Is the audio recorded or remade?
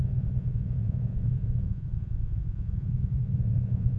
remade